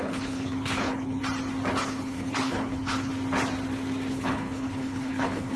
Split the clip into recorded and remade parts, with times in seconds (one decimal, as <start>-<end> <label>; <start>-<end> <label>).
0.0-1.2 remade; 1.2-1.8 recorded; 1.8-3.1 remade; 3.1-4.1 recorded; 4.1-5.6 remade